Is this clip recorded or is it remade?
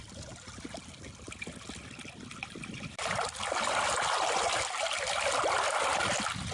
recorded